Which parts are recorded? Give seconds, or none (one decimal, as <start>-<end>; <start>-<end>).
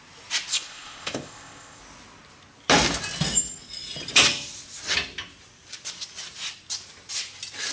0.0-0.5; 1.8-7.7